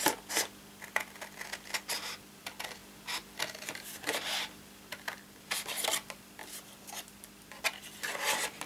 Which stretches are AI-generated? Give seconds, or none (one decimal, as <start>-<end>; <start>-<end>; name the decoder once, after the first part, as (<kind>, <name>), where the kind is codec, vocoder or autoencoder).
none